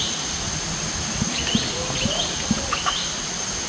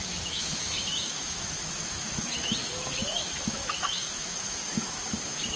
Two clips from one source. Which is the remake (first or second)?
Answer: second